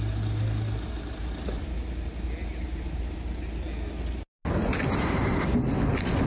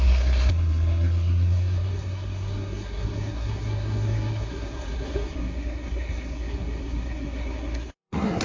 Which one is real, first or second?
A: first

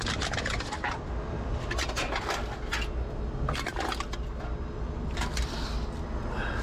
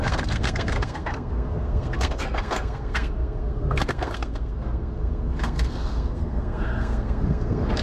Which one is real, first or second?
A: first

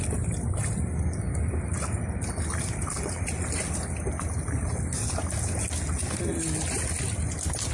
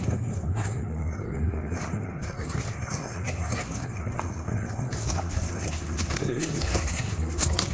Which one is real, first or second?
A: first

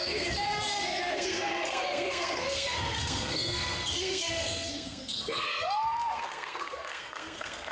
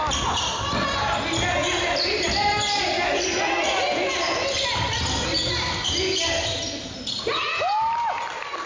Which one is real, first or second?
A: second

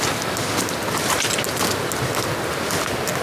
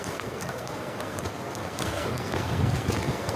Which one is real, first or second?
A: first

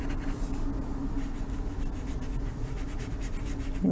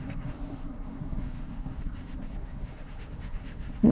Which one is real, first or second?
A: first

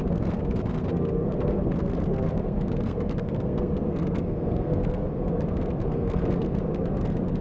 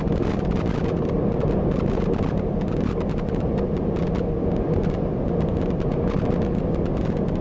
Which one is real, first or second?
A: second